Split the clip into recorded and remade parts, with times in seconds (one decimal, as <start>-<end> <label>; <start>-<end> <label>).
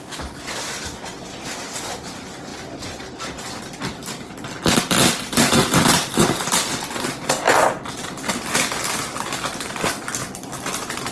0.0-11.1 recorded